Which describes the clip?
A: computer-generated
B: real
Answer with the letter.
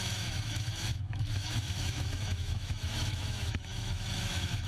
A